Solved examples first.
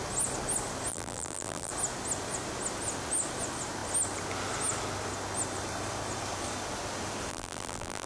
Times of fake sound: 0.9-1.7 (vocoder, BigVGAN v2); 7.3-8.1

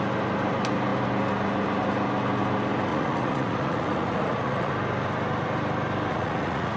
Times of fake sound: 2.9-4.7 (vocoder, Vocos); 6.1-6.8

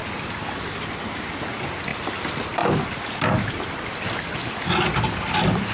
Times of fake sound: none

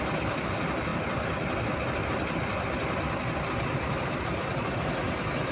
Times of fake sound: none